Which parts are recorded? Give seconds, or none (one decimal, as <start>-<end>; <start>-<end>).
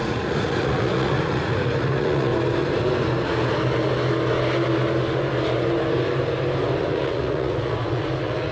2.3-6.8